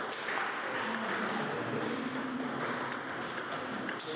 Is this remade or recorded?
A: recorded